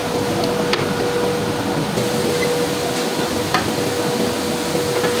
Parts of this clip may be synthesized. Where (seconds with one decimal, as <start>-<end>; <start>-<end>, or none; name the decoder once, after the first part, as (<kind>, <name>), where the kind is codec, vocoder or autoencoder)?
none